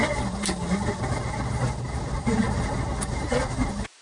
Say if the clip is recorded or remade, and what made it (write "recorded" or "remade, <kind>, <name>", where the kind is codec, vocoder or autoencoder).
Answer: recorded